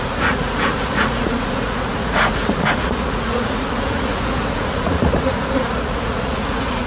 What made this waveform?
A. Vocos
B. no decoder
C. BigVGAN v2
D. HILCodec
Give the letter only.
A